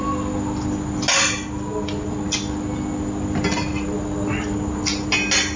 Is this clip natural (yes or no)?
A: yes